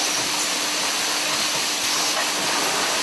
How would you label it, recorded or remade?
recorded